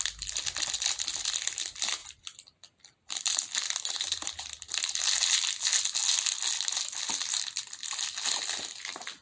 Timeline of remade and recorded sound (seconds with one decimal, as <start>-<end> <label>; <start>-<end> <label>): 0.0-9.2 recorded

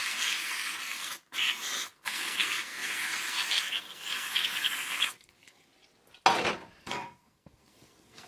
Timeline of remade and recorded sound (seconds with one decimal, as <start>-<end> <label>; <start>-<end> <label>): 0.0-5.7 remade; 5.7-6.8 recorded; 6.8-8.3 remade

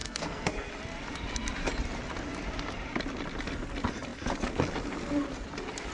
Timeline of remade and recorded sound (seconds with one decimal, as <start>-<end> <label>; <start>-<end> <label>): 0.0-0.7 remade; 0.7-5.9 recorded

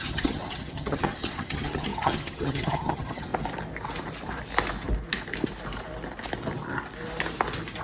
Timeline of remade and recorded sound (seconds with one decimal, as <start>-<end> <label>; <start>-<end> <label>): 0.0-3.3 remade; 3.3-7.8 recorded

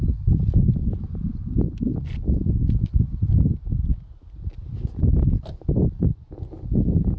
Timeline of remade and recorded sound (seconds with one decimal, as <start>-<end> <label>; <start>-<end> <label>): 0.0-7.2 recorded

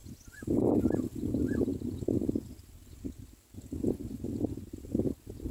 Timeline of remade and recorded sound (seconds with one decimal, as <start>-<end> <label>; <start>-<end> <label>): 0.0-1.7 recorded; 1.7-4.4 remade; 4.4-5.5 recorded